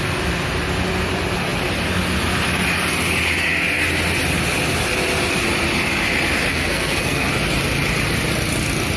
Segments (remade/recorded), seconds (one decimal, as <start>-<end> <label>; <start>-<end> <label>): 0.0-6.5 recorded; 6.5-7.3 remade; 7.3-9.0 recorded